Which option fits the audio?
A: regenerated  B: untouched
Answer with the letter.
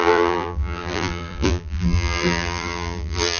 A